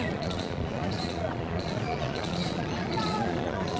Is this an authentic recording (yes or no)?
no